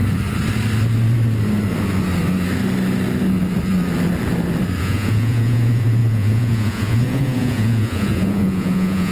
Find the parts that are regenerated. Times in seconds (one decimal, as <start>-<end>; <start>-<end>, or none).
4.8-9.1